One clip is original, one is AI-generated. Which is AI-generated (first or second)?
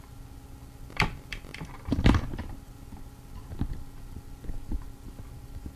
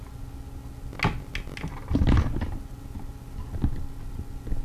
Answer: first